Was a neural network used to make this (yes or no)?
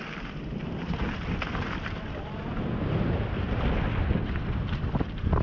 no